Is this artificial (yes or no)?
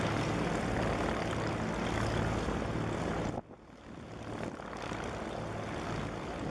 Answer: no